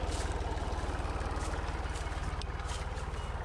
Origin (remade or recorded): recorded